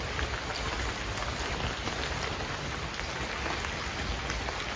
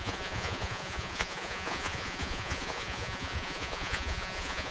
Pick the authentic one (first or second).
first